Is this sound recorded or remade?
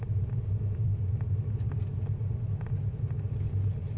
recorded